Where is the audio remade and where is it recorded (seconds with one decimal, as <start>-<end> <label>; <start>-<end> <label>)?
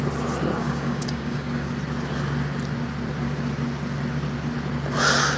0.0-0.6 recorded; 0.6-1.7 remade; 1.7-5.4 recorded